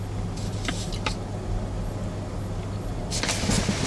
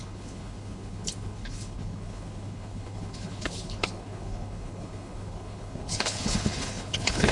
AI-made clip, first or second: second